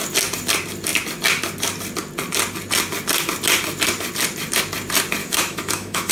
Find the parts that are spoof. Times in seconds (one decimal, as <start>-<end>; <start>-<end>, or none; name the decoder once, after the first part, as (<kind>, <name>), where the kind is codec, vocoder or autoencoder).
5.2-6.1 (autoencoder, DAC-VAE)